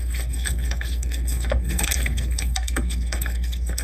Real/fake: fake